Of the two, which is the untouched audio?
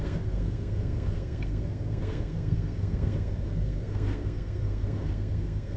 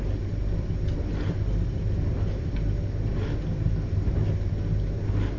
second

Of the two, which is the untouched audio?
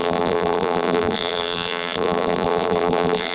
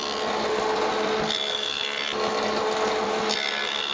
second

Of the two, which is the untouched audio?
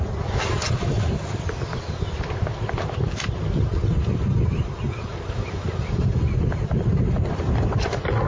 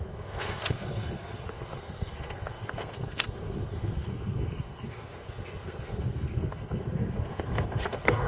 first